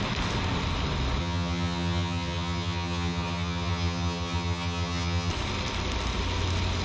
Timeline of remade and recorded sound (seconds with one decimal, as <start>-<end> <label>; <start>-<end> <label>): 0.0-1.2 recorded; 1.2-5.3 remade; 5.3-6.8 recorded